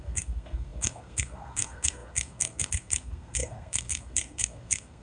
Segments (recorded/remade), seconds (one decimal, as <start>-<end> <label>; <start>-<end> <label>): 0.0-5.0 remade